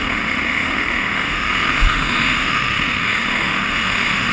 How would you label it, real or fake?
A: fake